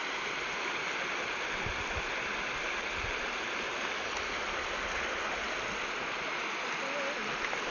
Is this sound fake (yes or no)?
no